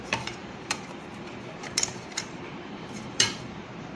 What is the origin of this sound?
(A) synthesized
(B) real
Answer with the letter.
A